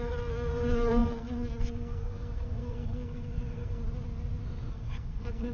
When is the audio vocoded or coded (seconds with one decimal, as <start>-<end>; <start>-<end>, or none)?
0.0-3.8; 4.7-5.5